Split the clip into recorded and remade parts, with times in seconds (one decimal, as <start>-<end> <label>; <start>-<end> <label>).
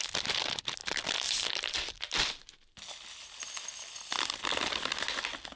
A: 0.0-5.6 recorded